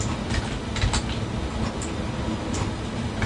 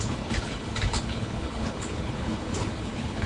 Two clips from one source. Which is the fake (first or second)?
second